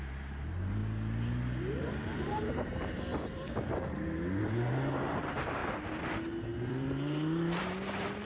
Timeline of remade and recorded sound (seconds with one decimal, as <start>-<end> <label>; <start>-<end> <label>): 0.0-0.8 remade; 0.8-1.9 recorded; 1.9-3.1 remade; 3.1-4.4 recorded; 4.4-5.6 remade; 5.6-6.7 recorded; 6.7-8.2 remade